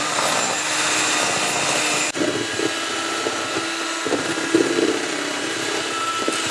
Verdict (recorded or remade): recorded